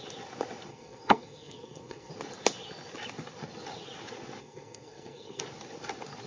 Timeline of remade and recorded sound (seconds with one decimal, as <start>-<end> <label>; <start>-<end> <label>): 0.0-0.7 recorded; 0.7-2.1 remade; 2.1-4.4 recorded; 4.4-5.4 remade; 5.4-6.3 recorded